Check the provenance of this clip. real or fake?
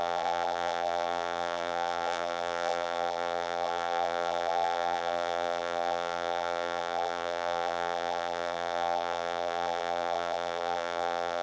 fake